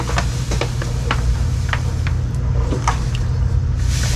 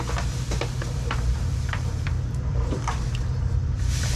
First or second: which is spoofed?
second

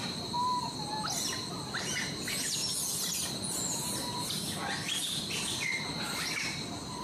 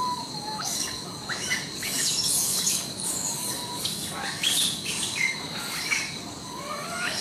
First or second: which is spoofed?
second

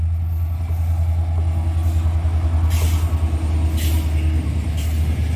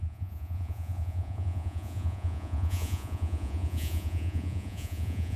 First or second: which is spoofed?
second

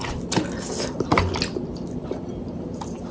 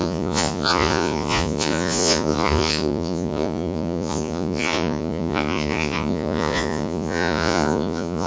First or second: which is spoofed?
second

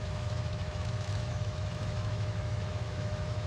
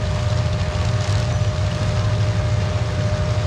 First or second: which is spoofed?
first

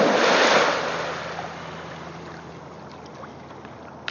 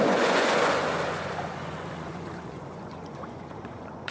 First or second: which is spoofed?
second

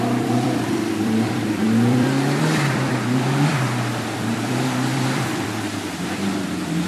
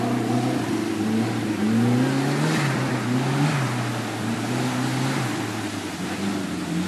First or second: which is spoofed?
first